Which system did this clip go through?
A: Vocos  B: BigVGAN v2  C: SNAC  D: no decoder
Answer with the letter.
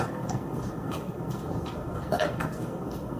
C